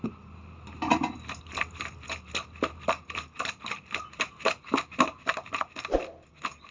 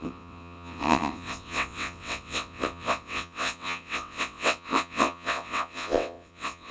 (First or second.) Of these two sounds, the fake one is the second